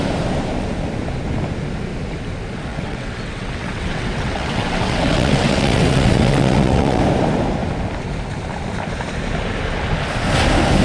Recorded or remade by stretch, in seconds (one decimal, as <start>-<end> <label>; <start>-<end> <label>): 0.0-2.7 recorded; 2.7-7.0 remade; 7.0-10.8 recorded